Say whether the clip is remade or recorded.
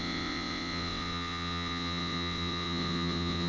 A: remade